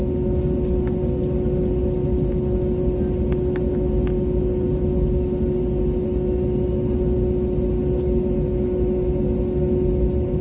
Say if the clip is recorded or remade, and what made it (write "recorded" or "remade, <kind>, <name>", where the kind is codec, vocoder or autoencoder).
recorded